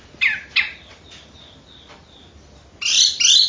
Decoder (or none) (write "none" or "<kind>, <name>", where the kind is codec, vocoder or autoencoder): none